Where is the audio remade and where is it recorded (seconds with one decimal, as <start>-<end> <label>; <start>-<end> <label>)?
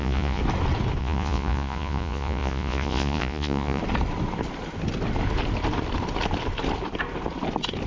0.0-0.4 remade; 0.4-1.0 recorded; 1.0-3.8 remade; 3.8-7.9 recorded